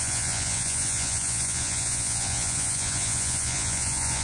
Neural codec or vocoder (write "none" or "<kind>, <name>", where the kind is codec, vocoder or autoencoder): vocoder, Vocos